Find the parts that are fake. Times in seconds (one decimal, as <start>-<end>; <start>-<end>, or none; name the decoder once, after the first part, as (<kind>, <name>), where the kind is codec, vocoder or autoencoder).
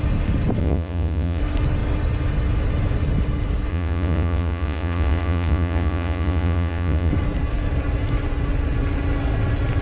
0.6-1.4 (vocoder, Vocos); 3.7-7.1